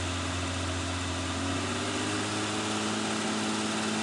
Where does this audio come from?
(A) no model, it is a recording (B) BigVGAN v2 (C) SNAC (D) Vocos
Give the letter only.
A